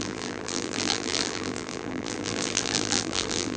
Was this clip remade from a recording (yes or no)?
yes